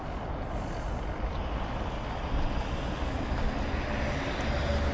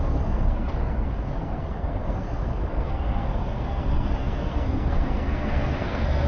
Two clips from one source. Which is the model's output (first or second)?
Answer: second